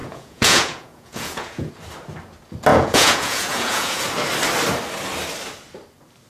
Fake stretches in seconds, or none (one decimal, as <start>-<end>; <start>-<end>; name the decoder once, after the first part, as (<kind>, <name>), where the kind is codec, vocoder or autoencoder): 0.0-1.7 (vocoder, Vocos); 2.7-4.0